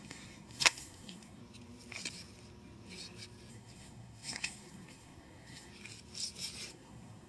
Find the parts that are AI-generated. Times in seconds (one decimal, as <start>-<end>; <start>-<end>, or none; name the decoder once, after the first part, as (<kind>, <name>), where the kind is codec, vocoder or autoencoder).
0.0-1.4 (codec, SNAC); 3.5-5.7; 6.7-7.3